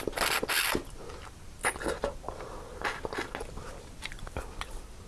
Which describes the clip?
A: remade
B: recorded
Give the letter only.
B